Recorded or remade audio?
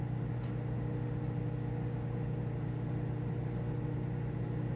recorded